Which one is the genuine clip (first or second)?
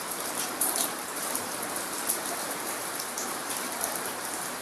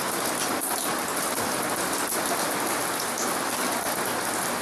second